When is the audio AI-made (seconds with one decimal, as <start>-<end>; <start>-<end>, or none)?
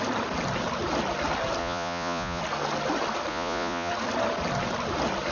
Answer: 1.6-2.4; 3.3-3.9